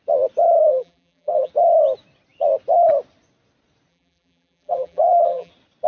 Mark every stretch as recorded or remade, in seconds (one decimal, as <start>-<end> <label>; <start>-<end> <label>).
0.0-0.6 recorded; 0.6-1.5 remade; 1.5-3.9 recorded; 3.9-5.5 remade; 5.5-5.9 recorded